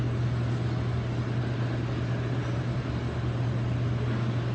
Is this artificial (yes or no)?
no